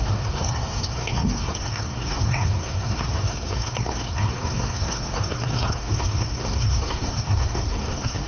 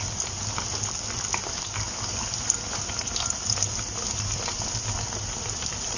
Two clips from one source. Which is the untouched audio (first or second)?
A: second